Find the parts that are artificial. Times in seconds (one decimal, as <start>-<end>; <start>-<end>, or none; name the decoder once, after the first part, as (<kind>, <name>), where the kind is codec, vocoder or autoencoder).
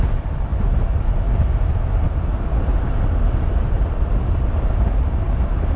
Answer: 0.0-0.5 (vocoder, BigVGAN v2); 3.6-5.8